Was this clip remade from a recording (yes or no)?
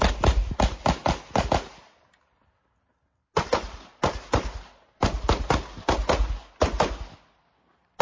no